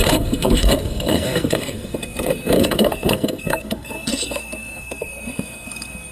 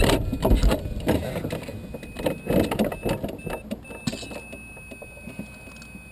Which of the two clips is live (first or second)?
second